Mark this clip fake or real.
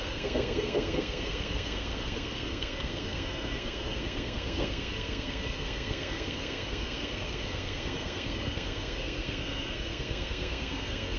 fake